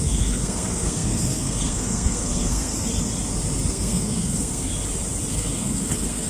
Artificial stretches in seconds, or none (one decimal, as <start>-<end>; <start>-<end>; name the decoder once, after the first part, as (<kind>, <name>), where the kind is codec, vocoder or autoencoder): 0.0-2.7 (codec, SNAC); 3.7-4.7; 5.3-6.3